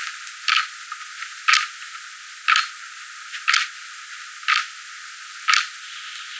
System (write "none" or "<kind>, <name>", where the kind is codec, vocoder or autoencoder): none